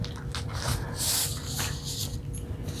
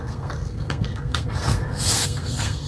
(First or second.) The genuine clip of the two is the first